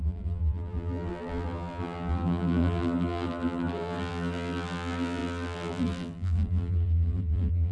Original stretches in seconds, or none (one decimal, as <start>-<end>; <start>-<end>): none